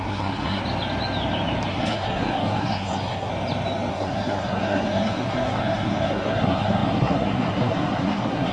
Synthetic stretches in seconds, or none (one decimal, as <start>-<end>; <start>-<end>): 0.0-0.6; 1.7-3.3; 3.9-8.5

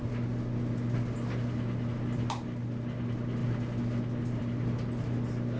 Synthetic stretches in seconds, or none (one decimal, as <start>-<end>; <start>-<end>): none

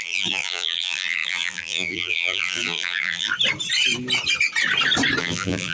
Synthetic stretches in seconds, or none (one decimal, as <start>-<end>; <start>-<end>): 0.0-3.3; 5.2-5.7